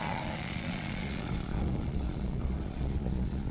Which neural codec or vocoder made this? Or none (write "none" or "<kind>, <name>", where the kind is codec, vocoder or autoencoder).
vocoder, Vocos